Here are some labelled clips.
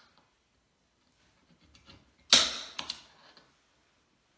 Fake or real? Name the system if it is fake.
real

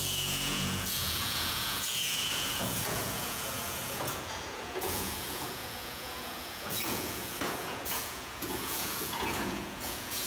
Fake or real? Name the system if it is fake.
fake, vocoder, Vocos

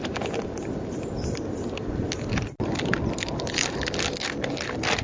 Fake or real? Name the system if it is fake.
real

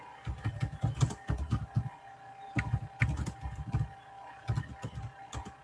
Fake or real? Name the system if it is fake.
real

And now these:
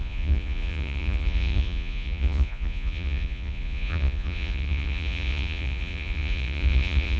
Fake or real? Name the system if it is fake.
fake, vocoder, Vocos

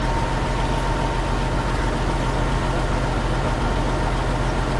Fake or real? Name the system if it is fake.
real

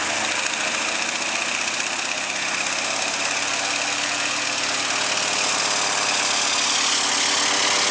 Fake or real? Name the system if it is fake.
real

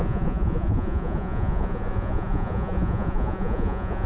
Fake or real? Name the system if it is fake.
fake, vocoder, Vocos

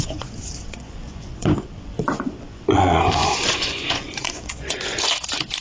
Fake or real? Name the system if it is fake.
fake, vocoder, Vocos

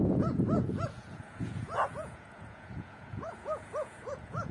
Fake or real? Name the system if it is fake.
fake, vocoder, Vocos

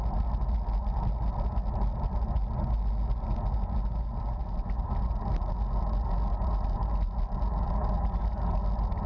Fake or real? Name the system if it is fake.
real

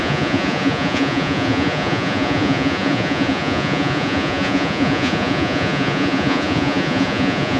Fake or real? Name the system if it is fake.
fake, vocoder, Vocos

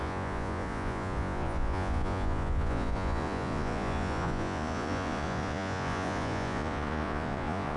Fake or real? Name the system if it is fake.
fake, vocoder, Vocos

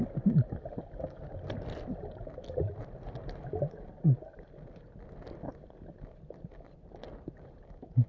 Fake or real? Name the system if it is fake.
real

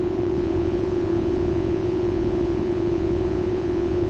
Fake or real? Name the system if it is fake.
fake, vocoder, Vocos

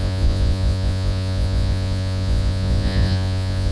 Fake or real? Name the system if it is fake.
fake, vocoder, Vocos